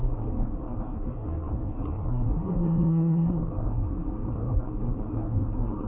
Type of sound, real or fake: fake